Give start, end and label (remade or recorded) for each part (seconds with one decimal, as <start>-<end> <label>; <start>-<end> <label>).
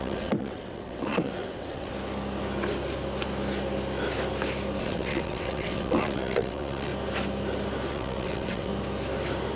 0.0-1.9 remade; 1.9-4.8 recorded; 4.8-6.9 remade; 6.9-7.9 recorded; 7.9-8.7 remade; 8.7-9.6 recorded